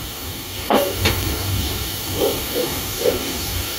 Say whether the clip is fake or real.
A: fake